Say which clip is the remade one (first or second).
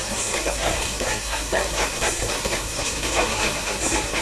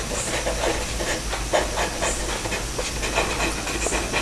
first